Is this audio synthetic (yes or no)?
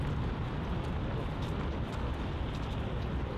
no